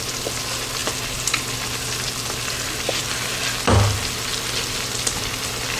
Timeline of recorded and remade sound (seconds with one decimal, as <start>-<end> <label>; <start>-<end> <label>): 0.0-5.8 recorded